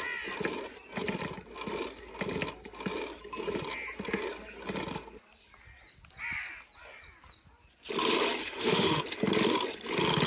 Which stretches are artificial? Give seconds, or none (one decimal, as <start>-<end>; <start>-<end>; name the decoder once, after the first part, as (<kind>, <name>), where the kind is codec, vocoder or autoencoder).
8.4-9.0 (autoencoder, DAC-VAE)